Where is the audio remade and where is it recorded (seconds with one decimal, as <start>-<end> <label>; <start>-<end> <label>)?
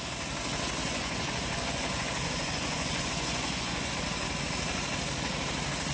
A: 0.0-0.8 recorded; 0.8-3.9 remade; 3.9-5.9 recorded